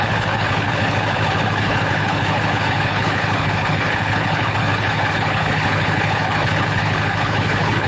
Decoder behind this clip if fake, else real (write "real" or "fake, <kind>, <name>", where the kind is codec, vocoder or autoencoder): fake, codec, HILCodec